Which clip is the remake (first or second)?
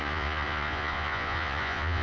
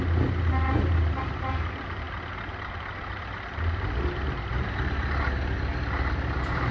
first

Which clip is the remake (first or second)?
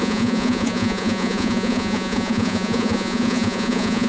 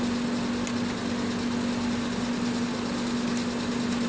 first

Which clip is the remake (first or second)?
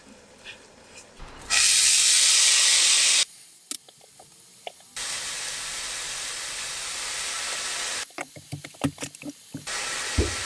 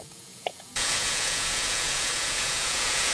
second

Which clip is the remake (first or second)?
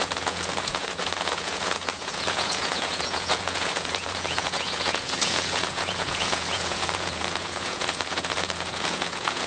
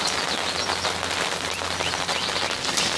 first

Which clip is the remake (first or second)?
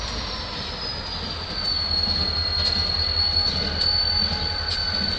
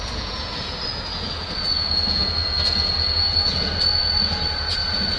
second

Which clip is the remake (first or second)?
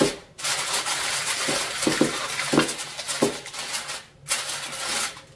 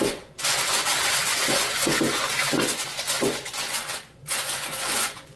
second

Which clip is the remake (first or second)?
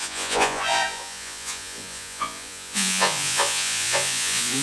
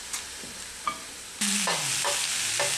first